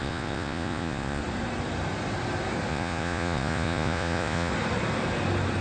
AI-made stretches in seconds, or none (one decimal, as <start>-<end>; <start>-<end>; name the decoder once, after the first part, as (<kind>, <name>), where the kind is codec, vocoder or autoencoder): 0.0-1.2 (vocoder, Vocos); 2.7-4.5